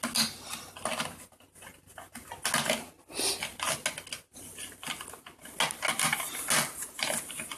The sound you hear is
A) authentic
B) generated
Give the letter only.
A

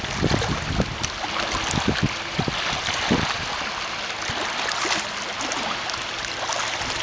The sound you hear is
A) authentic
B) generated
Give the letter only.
A